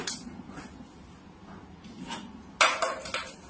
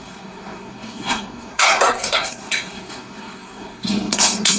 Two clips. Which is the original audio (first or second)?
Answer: first